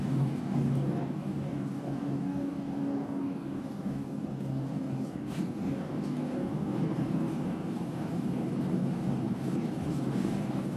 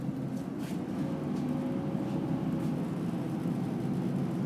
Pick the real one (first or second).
second